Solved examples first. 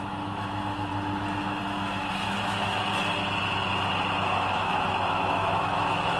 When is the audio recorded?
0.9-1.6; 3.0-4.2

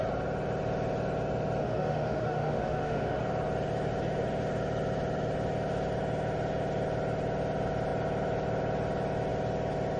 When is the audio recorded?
0.0-1.6; 3.2-10.0

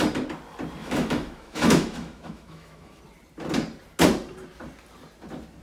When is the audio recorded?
0.0-0.8; 3.0-5.6